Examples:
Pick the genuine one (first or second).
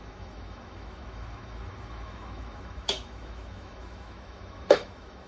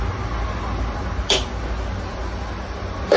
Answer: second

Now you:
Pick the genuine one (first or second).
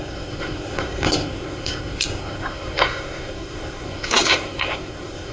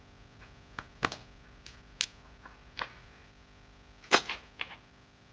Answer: second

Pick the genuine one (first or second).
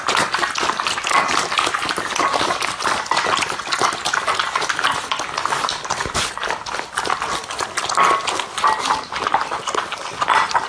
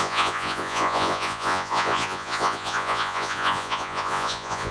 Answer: first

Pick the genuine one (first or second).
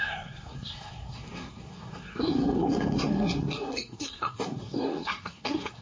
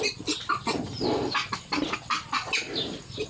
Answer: second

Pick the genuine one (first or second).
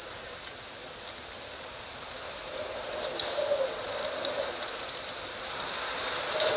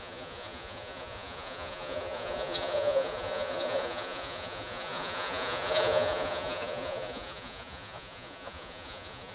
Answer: first